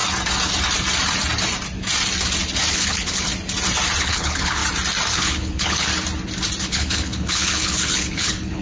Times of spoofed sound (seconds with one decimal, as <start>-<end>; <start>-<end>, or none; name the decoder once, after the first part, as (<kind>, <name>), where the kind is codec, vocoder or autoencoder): 2.7-3.3 (codec, HILCodec); 4.0-4.6; 5.1-5.9; 6.6-8.6